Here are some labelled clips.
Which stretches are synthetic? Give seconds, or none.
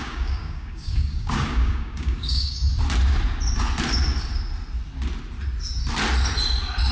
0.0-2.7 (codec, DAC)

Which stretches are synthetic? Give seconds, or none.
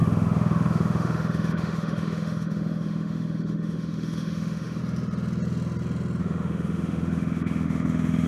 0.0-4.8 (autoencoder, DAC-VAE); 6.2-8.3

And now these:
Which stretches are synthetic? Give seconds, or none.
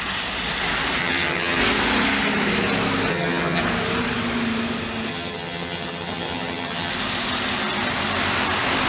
1.0-1.6 (vocoder, HiFi-GAN); 3.1-3.6; 5.1-6.9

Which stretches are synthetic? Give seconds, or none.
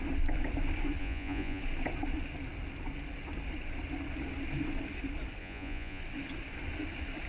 1.0-1.6 (vocoder, Vocos); 5.4-6.0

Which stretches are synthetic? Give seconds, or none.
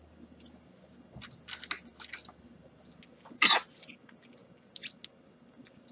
none